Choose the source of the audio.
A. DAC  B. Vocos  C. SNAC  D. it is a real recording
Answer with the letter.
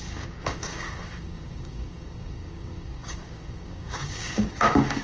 A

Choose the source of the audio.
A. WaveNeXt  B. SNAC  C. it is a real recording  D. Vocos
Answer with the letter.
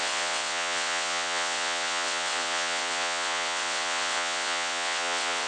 A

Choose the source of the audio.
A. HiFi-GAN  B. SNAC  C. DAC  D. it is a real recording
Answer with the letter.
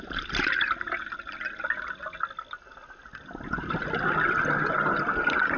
D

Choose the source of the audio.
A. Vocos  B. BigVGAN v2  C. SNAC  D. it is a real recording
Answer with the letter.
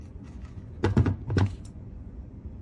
A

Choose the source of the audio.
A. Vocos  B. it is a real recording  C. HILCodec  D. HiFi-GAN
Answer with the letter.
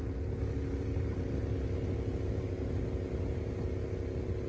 B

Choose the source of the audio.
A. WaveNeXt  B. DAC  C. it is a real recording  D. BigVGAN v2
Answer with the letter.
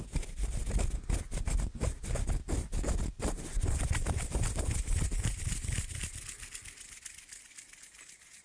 C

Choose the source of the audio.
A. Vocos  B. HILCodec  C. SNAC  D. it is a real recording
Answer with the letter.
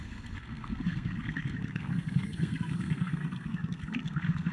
C